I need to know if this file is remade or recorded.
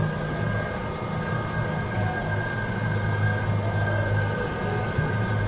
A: recorded